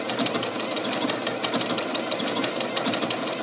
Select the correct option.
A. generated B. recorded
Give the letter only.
A